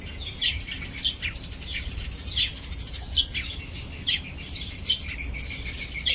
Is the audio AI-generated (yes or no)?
no